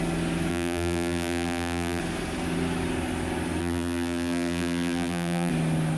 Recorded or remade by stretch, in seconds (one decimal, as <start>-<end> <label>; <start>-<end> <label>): 0.0-0.5 recorded; 0.5-2.0 remade; 2.0-3.6 recorded; 3.6-5.5 remade; 5.5-6.0 recorded